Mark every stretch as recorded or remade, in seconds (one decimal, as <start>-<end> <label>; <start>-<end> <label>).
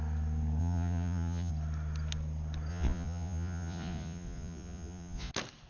0.0-0.6 recorded; 0.6-1.5 remade; 1.5-2.7 recorded; 2.7-5.3 remade; 5.3-5.7 recorded